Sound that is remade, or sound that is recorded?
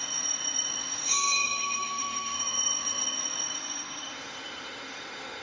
remade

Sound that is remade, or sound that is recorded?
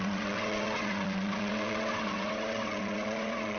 remade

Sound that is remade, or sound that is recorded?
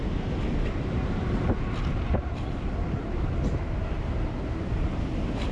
recorded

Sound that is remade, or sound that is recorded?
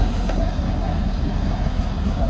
remade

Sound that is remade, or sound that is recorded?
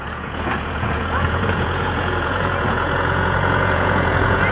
remade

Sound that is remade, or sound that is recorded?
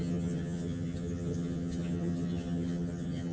remade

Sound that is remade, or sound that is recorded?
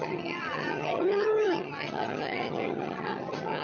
remade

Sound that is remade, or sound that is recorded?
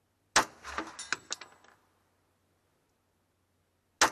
recorded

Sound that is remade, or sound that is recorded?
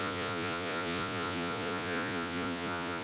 remade